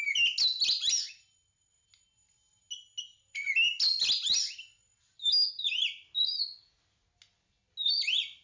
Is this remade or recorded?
recorded